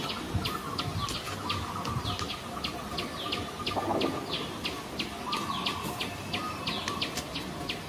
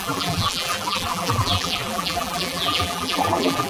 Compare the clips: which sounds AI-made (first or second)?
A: second